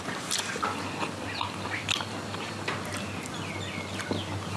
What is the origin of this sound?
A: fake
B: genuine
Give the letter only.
B